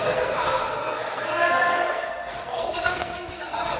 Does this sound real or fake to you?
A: fake